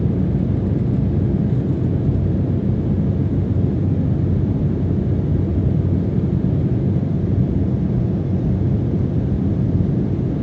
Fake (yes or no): no